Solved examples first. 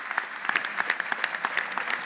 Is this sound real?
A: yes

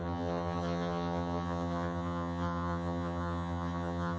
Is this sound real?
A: no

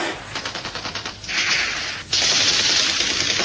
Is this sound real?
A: yes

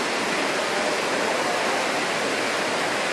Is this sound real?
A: no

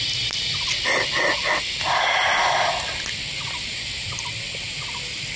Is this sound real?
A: yes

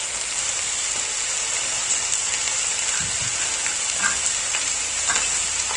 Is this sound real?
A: yes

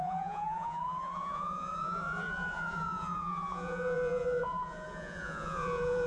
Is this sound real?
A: no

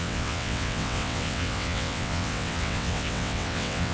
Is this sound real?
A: no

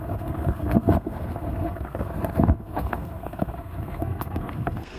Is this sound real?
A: no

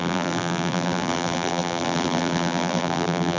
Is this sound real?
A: no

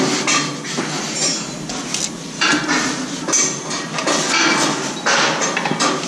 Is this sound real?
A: yes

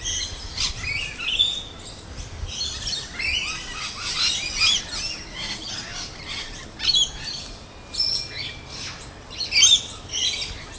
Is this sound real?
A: yes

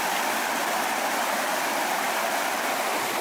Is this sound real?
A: no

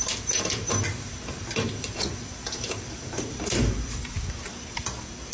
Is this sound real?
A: no